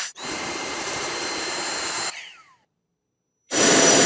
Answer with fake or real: fake